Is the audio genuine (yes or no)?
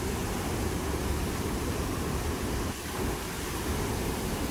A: no